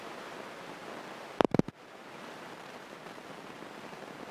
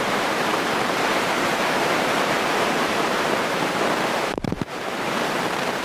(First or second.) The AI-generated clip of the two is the second